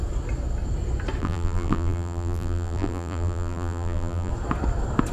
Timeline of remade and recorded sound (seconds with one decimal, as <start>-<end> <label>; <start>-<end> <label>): 0.0-1.2 recorded; 1.2-4.3 remade; 4.3-5.1 recorded